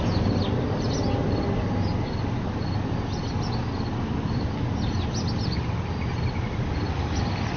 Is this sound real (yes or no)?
yes